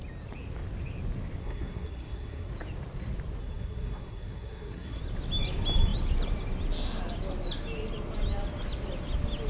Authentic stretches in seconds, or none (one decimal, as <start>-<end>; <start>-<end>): 0.0-1.4; 2.5-3.4; 5.0-9.5